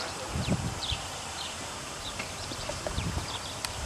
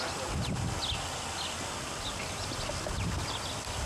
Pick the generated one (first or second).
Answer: first